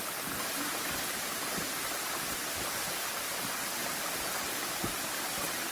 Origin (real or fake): real